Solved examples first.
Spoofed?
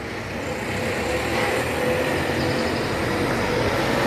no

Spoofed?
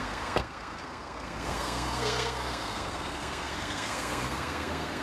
yes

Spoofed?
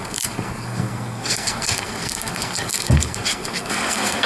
yes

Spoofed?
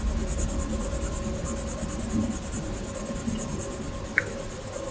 no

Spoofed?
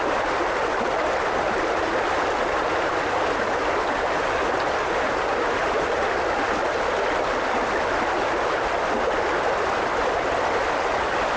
no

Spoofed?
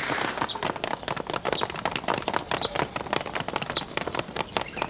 no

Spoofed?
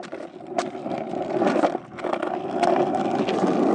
no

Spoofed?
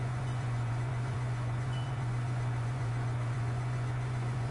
yes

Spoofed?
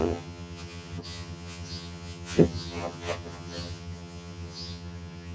yes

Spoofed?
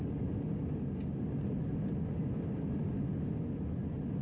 no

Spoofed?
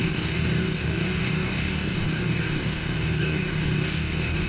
yes